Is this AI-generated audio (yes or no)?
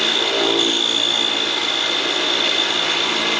no